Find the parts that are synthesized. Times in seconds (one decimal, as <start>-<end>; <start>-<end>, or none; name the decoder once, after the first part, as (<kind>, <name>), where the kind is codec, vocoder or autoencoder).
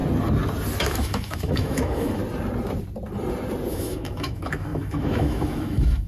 0.8-2.2 (autoencoder, DAC-VAE); 3.7-6.1